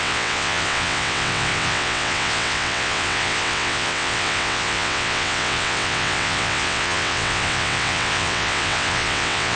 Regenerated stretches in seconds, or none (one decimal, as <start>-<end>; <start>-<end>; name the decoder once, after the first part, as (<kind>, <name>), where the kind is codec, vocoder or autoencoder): 0.0-9.6 (vocoder, WaveNeXt)